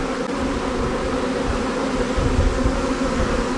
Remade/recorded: recorded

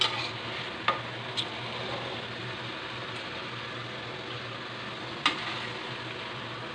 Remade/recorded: recorded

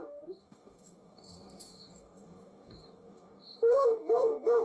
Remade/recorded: remade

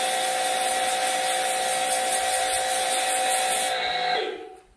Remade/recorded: recorded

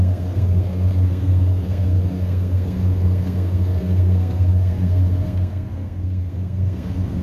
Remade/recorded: remade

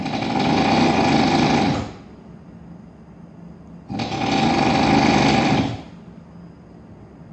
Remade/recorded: recorded